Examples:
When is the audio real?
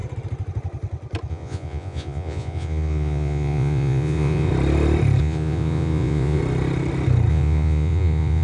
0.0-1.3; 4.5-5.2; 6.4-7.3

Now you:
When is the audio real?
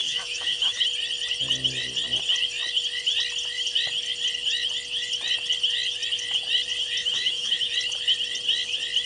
0.8-7.0; 7.7-9.1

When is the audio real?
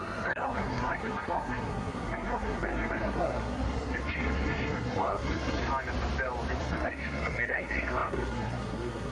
5.6-6.6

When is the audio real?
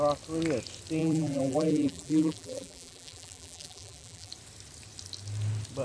0.0-1.0; 4.3-5.8